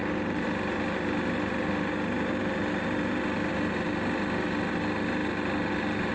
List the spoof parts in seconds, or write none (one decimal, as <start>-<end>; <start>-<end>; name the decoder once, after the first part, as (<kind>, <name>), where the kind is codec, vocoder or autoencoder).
none